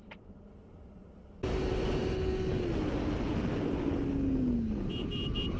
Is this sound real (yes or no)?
yes